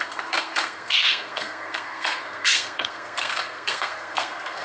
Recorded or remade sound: remade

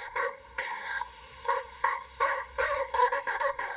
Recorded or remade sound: remade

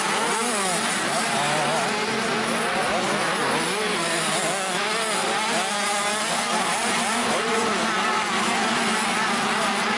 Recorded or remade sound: recorded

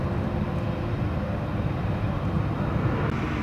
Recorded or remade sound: recorded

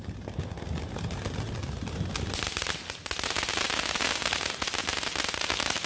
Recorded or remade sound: recorded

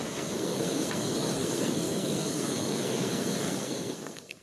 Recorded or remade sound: remade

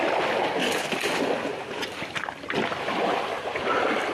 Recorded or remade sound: recorded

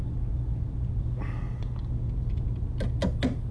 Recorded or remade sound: recorded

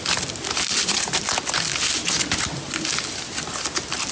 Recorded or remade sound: recorded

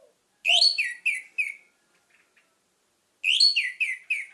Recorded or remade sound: recorded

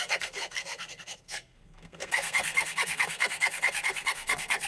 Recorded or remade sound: remade